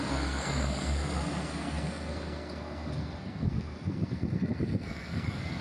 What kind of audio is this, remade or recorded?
remade